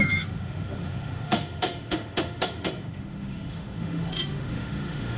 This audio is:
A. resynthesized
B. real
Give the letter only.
A